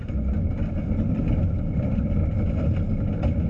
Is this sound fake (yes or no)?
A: no